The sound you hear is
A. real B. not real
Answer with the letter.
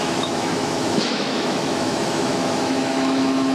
B